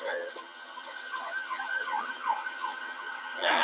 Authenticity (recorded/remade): remade